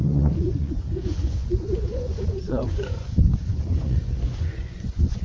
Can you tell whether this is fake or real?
fake